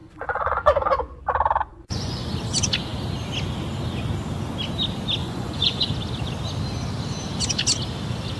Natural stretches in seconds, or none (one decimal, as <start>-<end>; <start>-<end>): 1.2-1.7; 2.3-5.2; 5.8-8.4